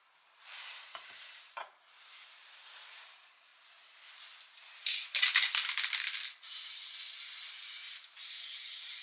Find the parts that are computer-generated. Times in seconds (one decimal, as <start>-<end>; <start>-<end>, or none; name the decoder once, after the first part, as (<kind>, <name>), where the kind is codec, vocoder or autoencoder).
0.0-3.5 (vocoder, BigVGAN v2); 7.7-9.0